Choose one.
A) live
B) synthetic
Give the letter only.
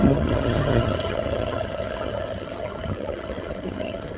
B